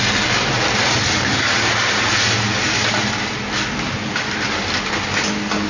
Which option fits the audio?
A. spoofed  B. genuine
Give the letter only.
B